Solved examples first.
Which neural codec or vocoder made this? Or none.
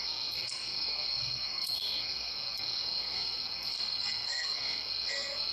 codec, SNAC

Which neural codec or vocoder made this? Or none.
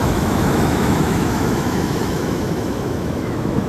autoencoder, DAC-VAE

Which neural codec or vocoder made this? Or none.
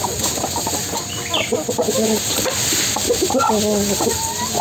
none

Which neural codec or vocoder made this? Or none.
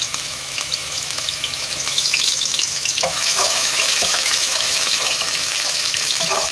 autoencoder, DAC-VAE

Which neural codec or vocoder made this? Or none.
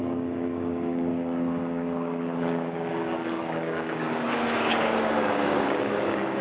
codec, DAC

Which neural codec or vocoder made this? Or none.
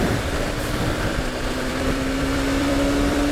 vocoder, BigVGAN v2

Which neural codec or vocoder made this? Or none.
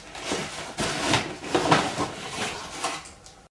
none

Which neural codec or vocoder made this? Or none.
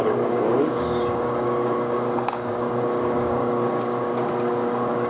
codec, DAC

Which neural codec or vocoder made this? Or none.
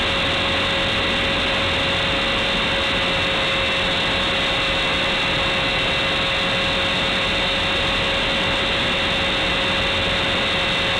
none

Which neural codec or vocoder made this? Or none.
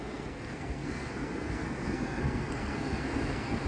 codec, SNAC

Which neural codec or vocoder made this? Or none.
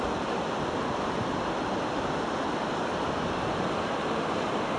vocoder, BigVGAN v2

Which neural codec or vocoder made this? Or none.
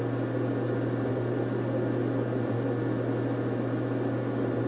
none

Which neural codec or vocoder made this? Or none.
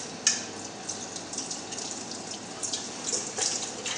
none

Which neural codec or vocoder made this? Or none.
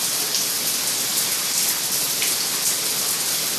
none